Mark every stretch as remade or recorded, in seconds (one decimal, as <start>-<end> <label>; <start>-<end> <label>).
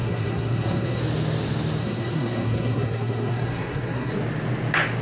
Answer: 0.0-1.0 remade; 1.0-1.8 recorded; 1.8-4.1 remade; 4.1-5.0 recorded